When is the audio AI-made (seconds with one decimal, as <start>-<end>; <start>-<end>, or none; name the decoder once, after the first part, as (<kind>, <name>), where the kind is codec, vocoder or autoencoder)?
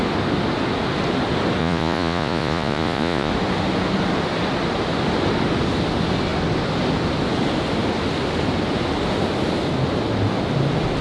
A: 1.6-3.3 (vocoder, Vocos)